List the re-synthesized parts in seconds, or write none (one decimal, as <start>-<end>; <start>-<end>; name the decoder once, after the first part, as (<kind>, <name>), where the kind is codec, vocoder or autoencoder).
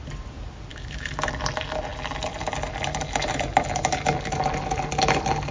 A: 0.7-1.3 (autoencoder, DAC-VAE)